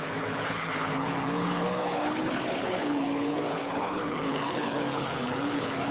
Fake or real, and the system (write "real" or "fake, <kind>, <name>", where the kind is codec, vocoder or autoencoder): fake, codec, HILCodec